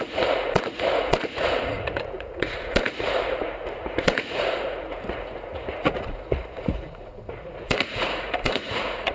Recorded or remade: remade